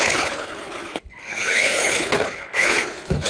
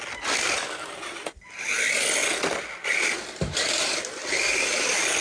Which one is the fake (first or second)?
first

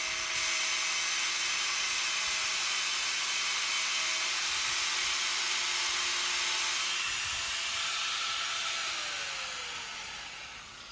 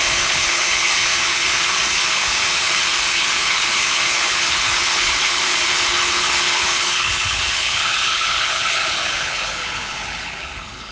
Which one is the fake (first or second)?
second